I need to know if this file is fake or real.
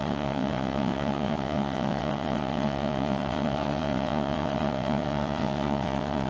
fake